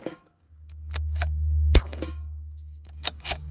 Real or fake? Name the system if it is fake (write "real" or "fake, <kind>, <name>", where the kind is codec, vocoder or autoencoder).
fake, codec, DAC